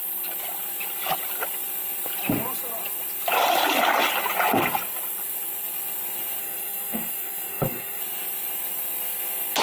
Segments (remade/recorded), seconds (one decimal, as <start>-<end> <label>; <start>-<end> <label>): 0.0-6.4 recorded; 6.4-8.0 remade; 8.0-9.6 recorded